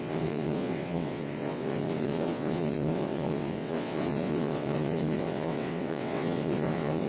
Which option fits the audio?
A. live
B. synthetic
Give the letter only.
B